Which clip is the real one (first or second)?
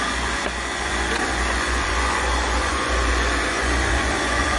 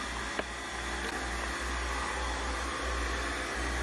second